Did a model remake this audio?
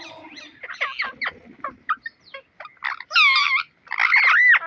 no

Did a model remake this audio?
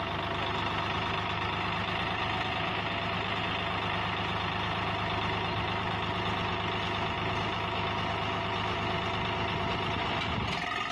no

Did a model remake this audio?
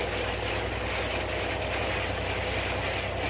no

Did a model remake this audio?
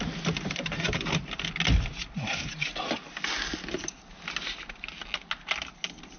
no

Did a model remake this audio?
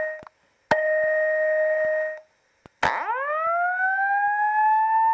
no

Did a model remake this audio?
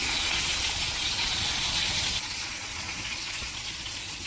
yes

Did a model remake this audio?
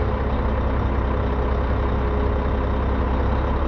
no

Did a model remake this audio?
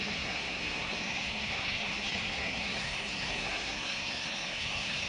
yes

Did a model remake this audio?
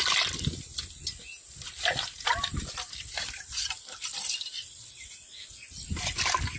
no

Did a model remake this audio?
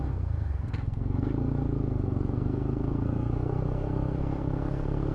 yes